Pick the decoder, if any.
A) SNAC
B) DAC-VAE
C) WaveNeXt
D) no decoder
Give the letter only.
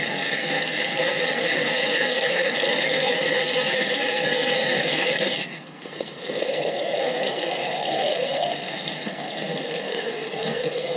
A